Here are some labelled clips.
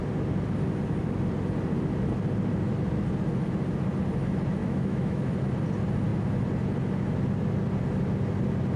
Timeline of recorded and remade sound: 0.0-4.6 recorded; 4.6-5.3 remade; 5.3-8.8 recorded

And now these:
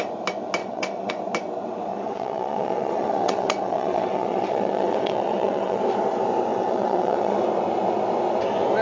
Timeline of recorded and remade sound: 0.0-0.6 recorded; 0.6-1.1 remade; 1.1-1.9 recorded; 1.9-5.8 remade; 5.8-6.5 recorded; 6.5-7.4 remade; 7.4-8.8 recorded

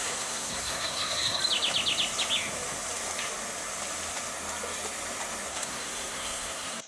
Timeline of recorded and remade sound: 0.0-1.4 remade; 1.4-5.5 recorded; 5.5-6.9 remade

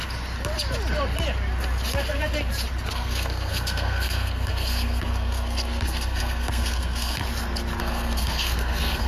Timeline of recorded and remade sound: 0.0-2.9 recorded; 2.9-7.2 remade; 7.2-7.8 recorded; 7.8-9.1 remade

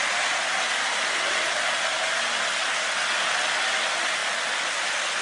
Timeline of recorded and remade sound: 0.0-5.2 recorded

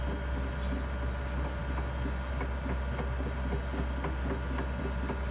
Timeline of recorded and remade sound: 0.0-5.3 recorded

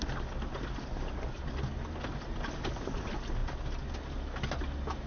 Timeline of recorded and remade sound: 0.0-5.1 recorded

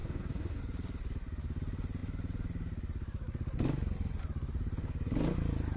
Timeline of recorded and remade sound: 0.0-0.6 remade; 0.6-5.8 recorded